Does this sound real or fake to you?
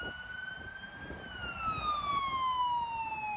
real